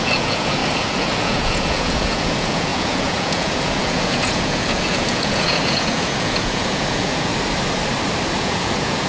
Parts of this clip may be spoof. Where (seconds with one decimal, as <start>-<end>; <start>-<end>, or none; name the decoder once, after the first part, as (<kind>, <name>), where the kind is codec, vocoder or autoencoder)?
0.0-7.3 (vocoder, Vocos); 8.4-9.1